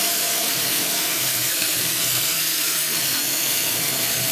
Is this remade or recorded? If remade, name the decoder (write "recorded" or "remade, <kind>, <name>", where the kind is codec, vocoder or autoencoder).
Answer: remade, codec, SNAC